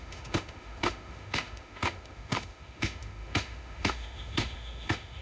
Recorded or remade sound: remade